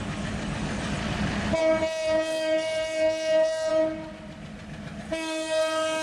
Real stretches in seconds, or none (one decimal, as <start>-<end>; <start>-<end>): 1.0-1.6; 3.7-5.0